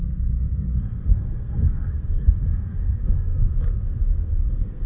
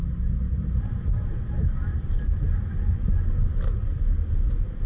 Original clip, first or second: second